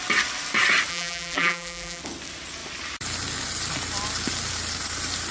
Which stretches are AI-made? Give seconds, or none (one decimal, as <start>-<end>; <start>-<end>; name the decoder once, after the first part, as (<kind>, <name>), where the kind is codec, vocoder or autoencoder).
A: 0.9-2.0 (vocoder, BigVGAN v2)